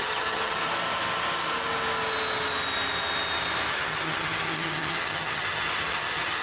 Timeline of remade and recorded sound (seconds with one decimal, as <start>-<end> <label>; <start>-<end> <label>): 0.0-0.6 remade; 0.6-3.7 recorded; 3.7-6.4 remade